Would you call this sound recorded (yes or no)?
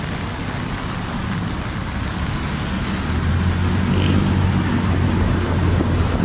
yes